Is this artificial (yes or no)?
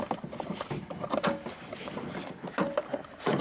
no